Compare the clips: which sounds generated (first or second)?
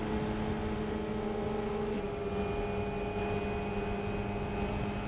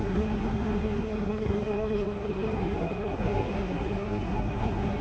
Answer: second